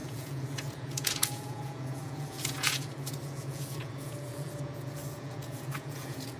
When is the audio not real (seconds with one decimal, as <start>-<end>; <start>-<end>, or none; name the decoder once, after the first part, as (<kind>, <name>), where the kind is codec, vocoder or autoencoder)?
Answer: 0.0-6.4 (vocoder, Vocos)